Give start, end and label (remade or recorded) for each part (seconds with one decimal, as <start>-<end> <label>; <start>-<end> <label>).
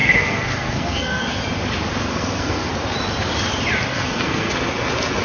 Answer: 0.0-1.4 remade; 1.4-2.1 recorded; 2.1-2.7 remade; 2.7-3.9 recorded; 3.9-4.5 remade; 4.5-5.2 recorded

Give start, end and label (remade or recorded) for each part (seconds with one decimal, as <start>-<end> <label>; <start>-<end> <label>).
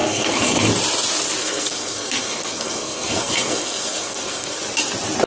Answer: 0.0-0.6 remade; 0.6-1.4 recorded; 1.4-4.6 remade; 4.6-5.3 recorded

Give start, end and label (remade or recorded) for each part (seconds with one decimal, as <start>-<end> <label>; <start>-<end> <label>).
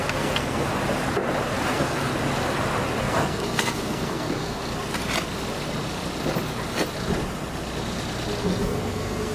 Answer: 0.0-0.7 remade; 0.7-1.7 recorded; 1.7-2.1 remade; 2.1-3.0 recorded; 3.0-4.6 remade; 4.6-8.4 recorded; 8.4-9.3 remade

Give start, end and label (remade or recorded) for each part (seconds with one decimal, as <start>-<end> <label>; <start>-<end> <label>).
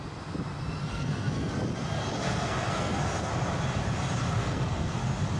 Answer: 0.0-0.9 recorded; 0.9-1.5 remade; 1.5-2.2 recorded; 2.2-3.3 remade; 3.3-4.4 recorded; 4.4-5.0 remade; 5.0-5.4 recorded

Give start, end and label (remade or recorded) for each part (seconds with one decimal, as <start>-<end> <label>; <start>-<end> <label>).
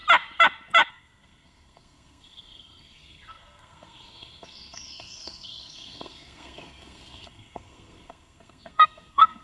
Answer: 0.0-0.9 recorded; 0.9-9.4 remade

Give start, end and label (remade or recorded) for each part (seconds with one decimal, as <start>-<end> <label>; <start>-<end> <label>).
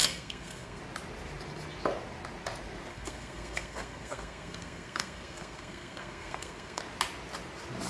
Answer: 0.0-0.8 remade; 0.8-2.9 recorded; 2.9-6.8 remade; 6.8-7.9 recorded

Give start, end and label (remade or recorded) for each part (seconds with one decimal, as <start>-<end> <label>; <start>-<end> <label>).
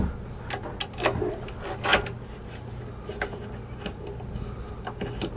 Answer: 0.0-5.4 recorded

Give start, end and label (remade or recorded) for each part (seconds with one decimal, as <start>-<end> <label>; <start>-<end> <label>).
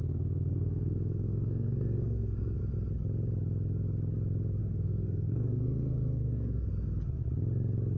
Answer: 0.0-2.6 remade; 2.6-4.6 recorded; 4.6-6.7 remade; 6.7-8.0 recorded